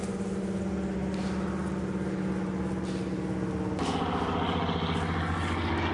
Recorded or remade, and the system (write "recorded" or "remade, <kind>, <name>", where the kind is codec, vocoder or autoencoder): recorded